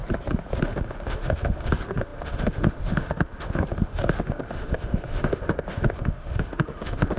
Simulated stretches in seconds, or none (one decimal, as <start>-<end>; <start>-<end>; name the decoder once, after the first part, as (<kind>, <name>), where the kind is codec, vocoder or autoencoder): 0.6-7.2 (autoencoder, DAC-VAE)